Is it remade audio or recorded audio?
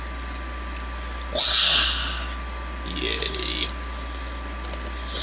recorded